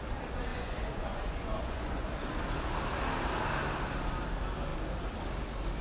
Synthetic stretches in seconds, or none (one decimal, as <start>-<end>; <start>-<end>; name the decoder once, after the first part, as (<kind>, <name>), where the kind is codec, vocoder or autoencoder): 0.5-2.1 (vocoder, Vocos)